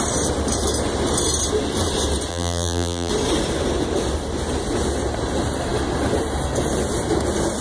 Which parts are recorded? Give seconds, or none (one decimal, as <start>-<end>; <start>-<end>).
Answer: 0.0-2.3; 3.1-7.6